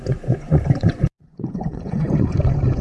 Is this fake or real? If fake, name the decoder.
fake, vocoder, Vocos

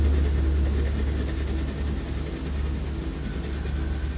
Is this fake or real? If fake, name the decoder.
real